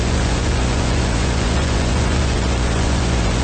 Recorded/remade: remade